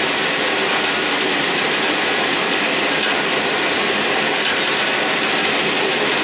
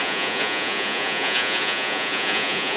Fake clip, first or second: second